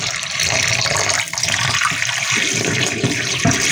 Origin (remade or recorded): remade